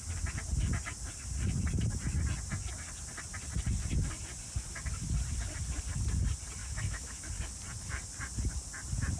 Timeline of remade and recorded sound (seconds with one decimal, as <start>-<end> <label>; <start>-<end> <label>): 0.0-6.6 recorded; 6.6-7.3 remade; 7.3-9.2 recorded